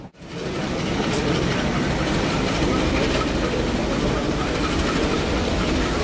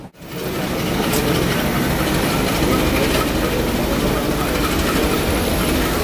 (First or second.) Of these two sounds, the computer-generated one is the first